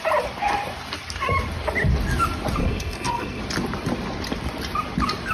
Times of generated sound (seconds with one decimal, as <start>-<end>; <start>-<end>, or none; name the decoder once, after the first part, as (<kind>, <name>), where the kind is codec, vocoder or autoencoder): 2.6-3.4 (codec, SNAC)